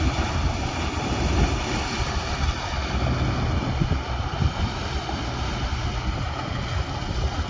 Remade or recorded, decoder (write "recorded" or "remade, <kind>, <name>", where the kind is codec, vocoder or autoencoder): recorded